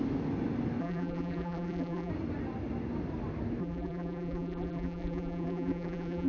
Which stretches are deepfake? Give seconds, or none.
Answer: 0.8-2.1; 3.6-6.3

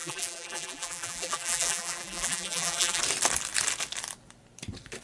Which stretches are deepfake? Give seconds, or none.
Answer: 0.0-3.0

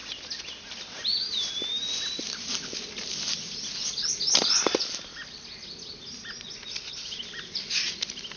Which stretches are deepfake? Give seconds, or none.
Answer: 0.0-2.5

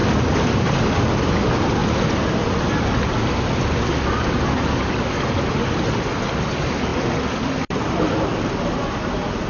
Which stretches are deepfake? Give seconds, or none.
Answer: 0.0-1.3; 6.9-8.5

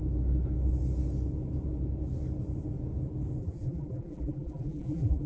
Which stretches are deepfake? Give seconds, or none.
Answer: 3.4-5.3

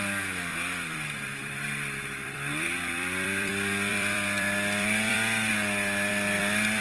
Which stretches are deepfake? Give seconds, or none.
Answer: 0.5-3.5; 3.9-5.5; 6.1-6.8